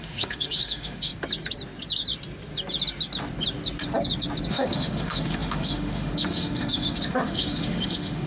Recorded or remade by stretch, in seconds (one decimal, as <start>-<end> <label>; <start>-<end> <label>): 0.0-1.1 remade; 1.1-4.5 recorded; 4.5-8.3 remade